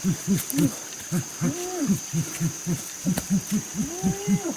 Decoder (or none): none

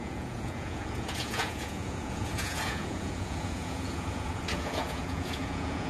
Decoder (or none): vocoder, Vocos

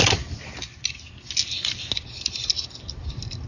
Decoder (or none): none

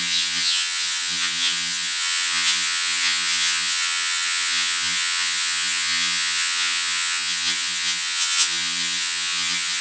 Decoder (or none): vocoder, HiFi-GAN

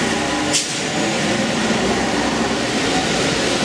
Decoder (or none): none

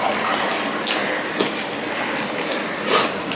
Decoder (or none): none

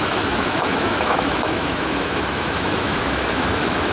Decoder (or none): autoencoder, DAC-VAE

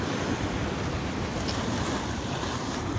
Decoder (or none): none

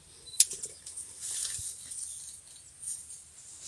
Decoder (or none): none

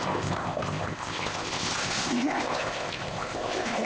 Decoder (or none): codec, ZipCodec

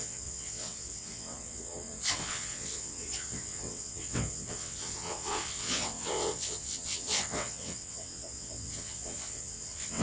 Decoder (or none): vocoder, WaveNeXt